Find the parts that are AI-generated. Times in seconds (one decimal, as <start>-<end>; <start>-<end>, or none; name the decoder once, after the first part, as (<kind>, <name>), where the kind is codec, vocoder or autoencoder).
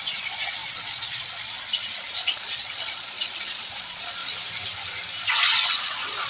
0.0-4.2 (vocoder, Vocos); 5.3-6.3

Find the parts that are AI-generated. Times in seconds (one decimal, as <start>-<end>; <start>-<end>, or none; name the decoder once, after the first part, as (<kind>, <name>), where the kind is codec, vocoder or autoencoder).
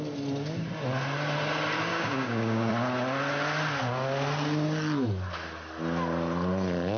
1.9-2.7 (codec, DAC)